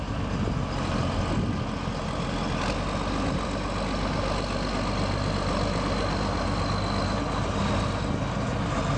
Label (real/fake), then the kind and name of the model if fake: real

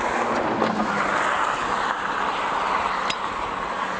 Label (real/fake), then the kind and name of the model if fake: real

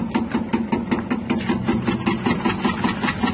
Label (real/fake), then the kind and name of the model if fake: real